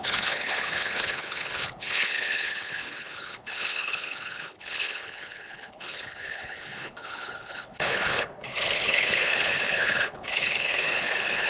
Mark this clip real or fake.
fake